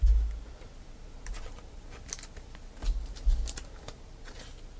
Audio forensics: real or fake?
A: real